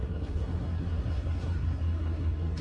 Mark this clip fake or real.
fake